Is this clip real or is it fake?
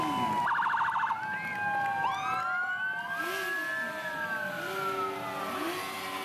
real